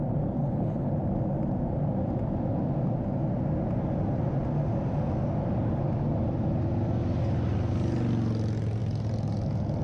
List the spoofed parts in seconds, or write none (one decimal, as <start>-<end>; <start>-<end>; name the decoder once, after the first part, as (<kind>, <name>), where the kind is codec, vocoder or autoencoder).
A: 0.4-0.9 (codec, HILCodec)